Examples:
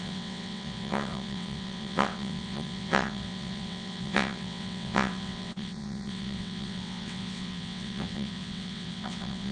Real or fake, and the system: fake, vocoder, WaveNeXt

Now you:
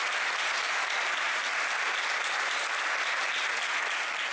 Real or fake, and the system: real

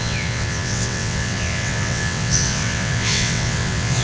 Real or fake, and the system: fake, vocoder, WaveNeXt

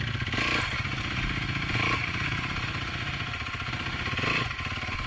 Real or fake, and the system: real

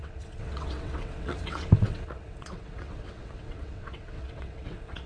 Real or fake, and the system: fake, vocoder, WaveNeXt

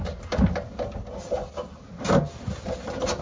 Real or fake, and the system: real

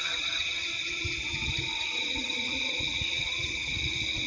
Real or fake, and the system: fake, vocoder, WaveNeXt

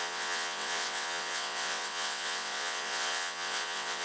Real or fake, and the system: fake, vocoder, WaveNeXt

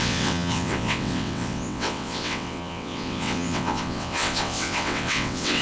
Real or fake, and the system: fake, vocoder, WaveNeXt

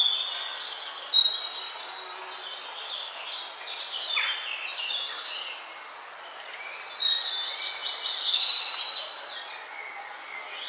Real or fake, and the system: real